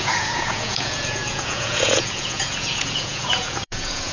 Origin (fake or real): fake